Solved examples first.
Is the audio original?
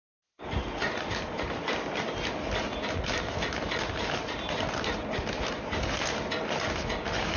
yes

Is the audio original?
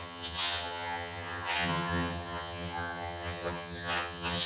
no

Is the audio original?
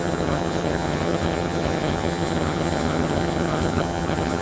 no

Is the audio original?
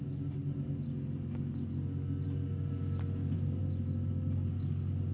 yes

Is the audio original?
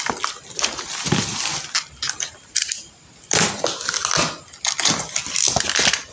yes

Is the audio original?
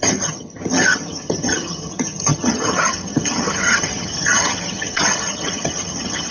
no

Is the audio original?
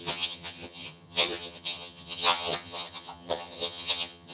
no